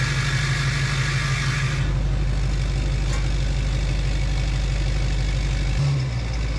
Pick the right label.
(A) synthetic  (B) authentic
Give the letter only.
B